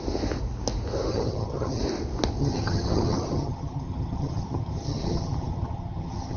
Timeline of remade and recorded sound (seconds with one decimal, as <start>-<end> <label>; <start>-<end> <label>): 0.0-1.1 recorded; 1.1-1.8 remade; 1.8-2.4 recorded; 2.4-6.4 remade